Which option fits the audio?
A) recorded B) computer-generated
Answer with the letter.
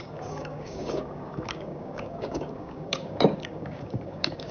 B